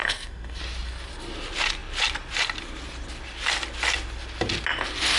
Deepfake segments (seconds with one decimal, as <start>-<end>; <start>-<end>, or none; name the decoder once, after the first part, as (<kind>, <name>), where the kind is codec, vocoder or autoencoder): 0.0-0.6 (codec, SNAC)